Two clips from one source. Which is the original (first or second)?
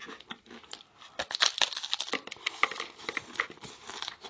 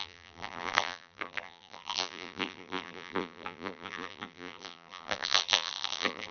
first